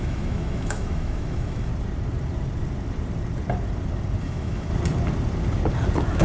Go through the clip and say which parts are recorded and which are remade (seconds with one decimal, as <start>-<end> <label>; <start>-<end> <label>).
0.0-1.7 remade; 1.7-4.2 recorded; 4.2-4.7 remade; 4.7-6.2 recorded

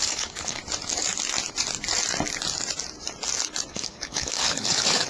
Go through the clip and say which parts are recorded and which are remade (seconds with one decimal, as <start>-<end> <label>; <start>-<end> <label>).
0.0-0.6 remade; 0.6-3.7 recorded; 3.7-5.1 remade

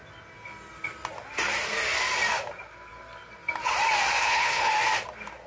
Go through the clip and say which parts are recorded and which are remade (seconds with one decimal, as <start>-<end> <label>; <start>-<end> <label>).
0.0-4.2 recorded; 4.2-4.7 remade; 4.7-5.5 recorded

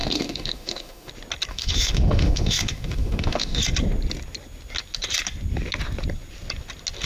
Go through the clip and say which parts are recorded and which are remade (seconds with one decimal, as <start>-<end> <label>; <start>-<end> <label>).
0.0-1.1 remade; 1.1-1.5 recorded; 1.5-3.6 remade; 3.6-7.1 recorded

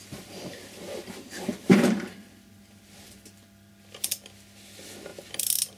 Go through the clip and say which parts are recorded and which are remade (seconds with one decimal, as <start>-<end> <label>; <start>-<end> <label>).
0.0-1.5 recorded; 1.5-3.7 remade; 3.7-5.8 recorded

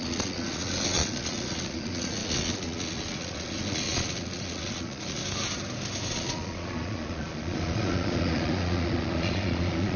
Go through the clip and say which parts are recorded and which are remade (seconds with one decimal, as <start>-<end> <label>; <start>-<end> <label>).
0.0-5.2 remade; 5.2-6.1 recorded; 6.1-10.0 remade